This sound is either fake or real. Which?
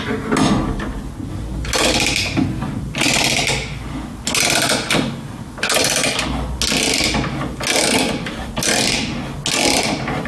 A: real